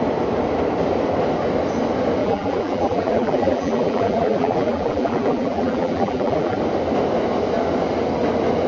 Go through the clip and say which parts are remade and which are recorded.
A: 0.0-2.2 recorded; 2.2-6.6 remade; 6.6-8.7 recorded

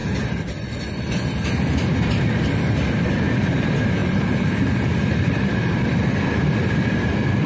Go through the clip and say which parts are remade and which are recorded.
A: 0.0-4.0 recorded; 4.0-5.7 remade; 5.7-7.5 recorded

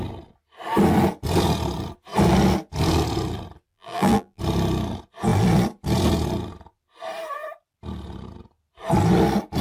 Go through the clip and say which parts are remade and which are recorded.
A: 0.0-3.7 recorded; 3.7-4.4 remade; 4.4-9.6 recorded

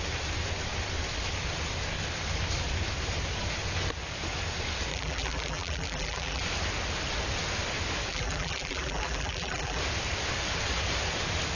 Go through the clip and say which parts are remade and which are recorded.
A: 0.0-4.9 recorded; 4.9-6.4 remade; 6.4-8.1 recorded; 8.1-9.8 remade; 9.8-11.6 recorded

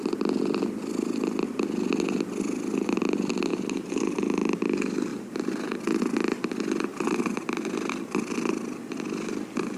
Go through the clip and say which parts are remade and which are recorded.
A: 0.0-3.5 recorded; 3.5-4.2 remade; 4.2-5.1 recorded; 5.1-5.8 remade; 5.8-6.9 recorded; 6.9-7.9 remade; 7.9-9.8 recorded

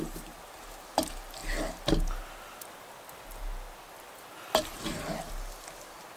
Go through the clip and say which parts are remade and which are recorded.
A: 0.0-6.2 recorded